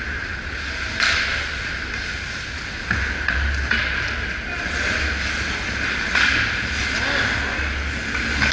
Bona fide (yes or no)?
yes